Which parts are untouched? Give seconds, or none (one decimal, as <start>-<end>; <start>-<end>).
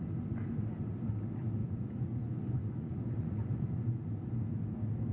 0.0-1.6; 4.0-5.1